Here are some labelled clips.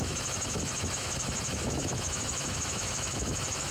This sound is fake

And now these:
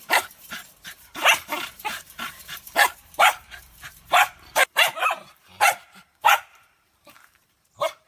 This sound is fake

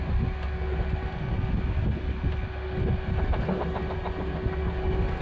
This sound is real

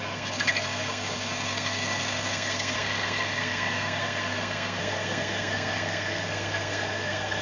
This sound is fake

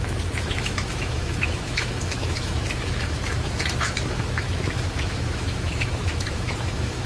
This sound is fake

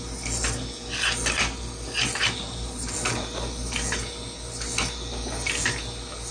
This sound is real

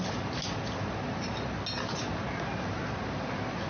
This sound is real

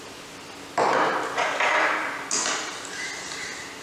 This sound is real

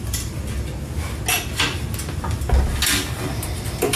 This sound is real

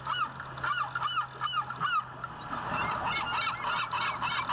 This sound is real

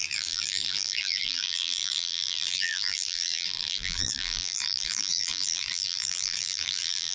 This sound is fake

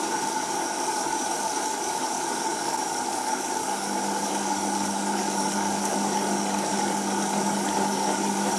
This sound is fake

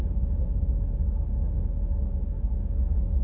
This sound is fake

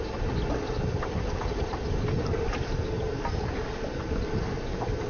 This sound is real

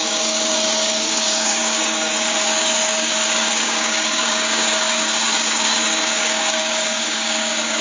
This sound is fake